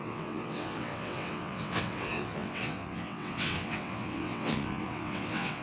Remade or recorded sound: remade